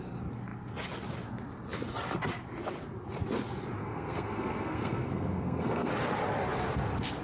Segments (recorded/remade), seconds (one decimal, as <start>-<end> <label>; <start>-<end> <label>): 0.0-3.8 recorded; 3.8-5.9 remade; 5.9-7.2 recorded